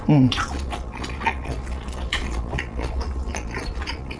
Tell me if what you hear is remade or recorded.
remade